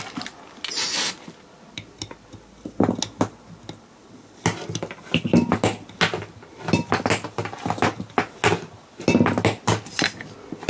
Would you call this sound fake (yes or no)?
no